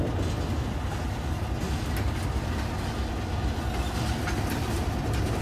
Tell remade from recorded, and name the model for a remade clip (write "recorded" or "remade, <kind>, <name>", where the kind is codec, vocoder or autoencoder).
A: recorded